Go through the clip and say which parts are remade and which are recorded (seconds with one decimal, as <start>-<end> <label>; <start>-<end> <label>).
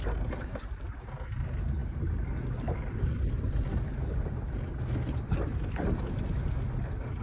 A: 0.0-7.2 recorded